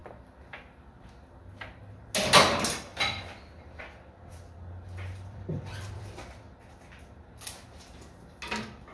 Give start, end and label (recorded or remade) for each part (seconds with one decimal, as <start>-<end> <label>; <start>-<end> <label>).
0.0-1.0 remade; 1.0-2.9 recorded; 2.9-6.0 remade; 6.0-8.9 recorded